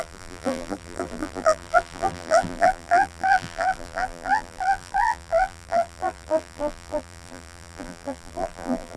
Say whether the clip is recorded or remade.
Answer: remade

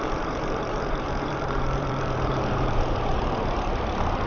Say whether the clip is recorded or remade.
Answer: remade